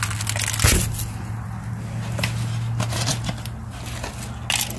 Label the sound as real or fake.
real